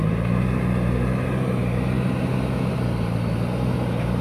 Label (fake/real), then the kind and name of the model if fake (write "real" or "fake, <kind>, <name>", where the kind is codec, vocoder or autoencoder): real